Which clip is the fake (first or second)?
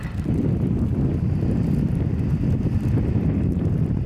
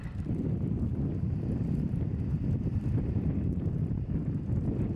second